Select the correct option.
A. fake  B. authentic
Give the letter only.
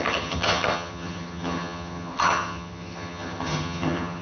A